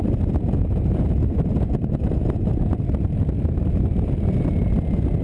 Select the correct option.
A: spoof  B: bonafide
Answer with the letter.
B